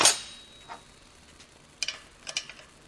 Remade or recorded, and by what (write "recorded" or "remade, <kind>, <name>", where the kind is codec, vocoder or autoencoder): recorded